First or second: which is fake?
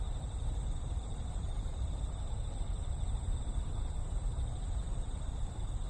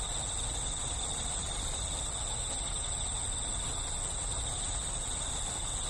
first